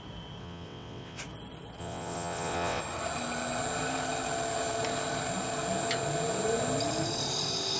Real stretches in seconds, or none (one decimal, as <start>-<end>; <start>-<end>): 0.0-0.4; 1.2-1.8; 2.8-7.8